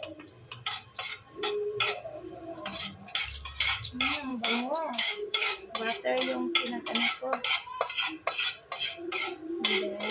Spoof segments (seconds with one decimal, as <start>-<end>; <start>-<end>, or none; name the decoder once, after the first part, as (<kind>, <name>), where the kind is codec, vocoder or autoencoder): 4.3-5.7 (codec, DAC)